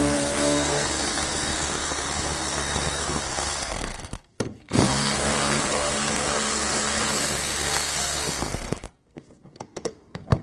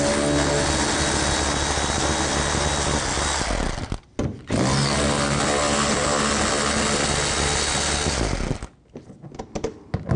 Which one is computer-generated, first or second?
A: first